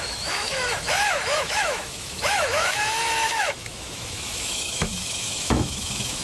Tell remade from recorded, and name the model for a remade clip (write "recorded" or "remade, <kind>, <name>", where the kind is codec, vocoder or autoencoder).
remade, autoencoder, DAC-VAE